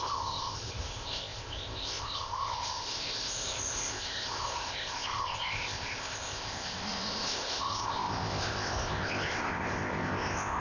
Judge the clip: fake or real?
fake